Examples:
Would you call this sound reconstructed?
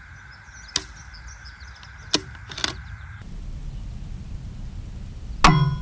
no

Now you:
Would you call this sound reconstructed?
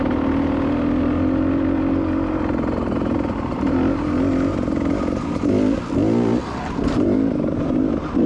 no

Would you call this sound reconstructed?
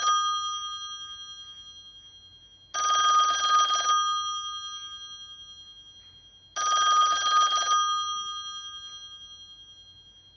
no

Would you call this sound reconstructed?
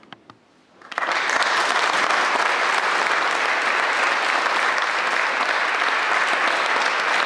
no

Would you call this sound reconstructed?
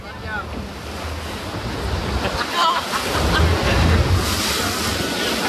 no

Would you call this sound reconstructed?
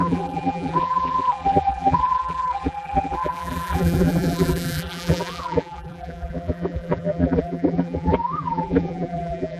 yes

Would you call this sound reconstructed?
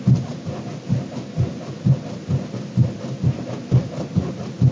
no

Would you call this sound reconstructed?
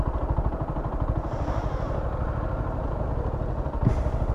no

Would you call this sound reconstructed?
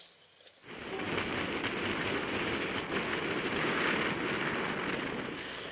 no